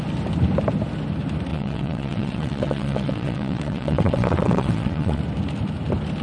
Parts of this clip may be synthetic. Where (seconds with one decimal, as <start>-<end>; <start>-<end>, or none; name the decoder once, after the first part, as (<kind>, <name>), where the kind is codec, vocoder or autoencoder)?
1.5-5.2 (vocoder, WaveNeXt)